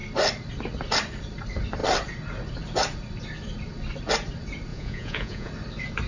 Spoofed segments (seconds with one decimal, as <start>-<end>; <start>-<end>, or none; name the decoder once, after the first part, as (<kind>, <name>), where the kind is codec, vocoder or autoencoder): 4.7-5.5 (vocoder, Vocos)